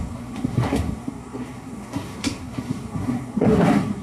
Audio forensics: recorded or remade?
remade